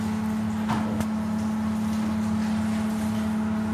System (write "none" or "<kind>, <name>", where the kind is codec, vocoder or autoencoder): none